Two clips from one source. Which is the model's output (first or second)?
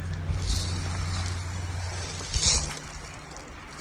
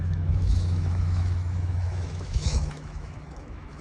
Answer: second